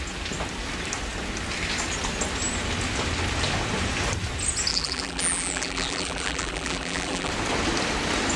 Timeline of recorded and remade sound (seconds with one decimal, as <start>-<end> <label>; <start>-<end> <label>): 0.0-4.7 recorded; 4.7-7.3 remade; 7.3-8.4 recorded